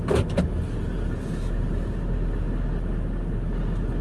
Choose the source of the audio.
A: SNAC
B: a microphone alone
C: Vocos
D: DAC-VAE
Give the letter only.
B